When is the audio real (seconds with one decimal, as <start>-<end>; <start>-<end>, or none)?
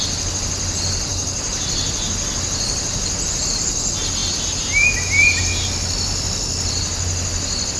0.0-7.8